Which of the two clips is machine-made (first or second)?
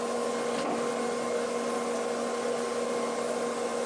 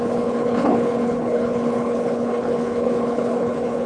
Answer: second